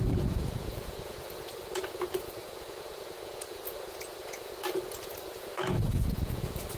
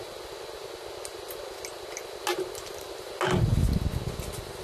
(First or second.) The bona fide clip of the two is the second